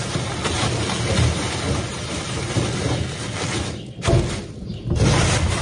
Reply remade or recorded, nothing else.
recorded